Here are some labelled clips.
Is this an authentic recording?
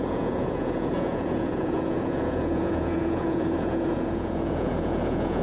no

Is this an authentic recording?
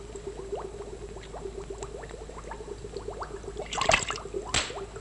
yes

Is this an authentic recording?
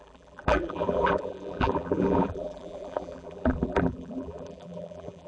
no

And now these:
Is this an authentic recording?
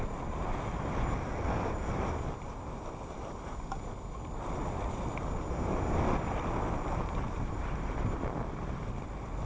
yes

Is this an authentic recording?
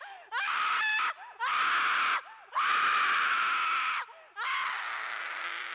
yes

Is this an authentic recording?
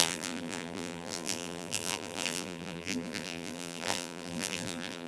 no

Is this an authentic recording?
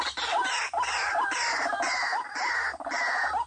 yes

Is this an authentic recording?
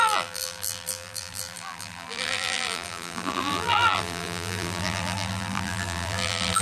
no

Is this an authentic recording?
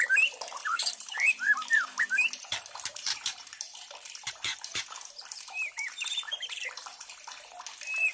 no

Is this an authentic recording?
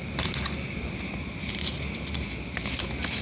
yes